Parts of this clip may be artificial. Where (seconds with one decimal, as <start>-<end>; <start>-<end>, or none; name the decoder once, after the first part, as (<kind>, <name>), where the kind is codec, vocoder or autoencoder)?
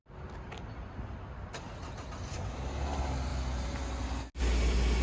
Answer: none